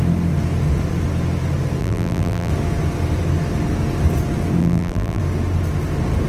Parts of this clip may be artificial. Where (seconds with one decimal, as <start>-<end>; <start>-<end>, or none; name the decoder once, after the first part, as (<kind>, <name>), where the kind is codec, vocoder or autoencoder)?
1.8-2.5 (vocoder, BigVGAN v2); 4.6-5.2